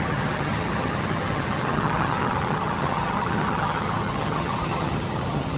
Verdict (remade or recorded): remade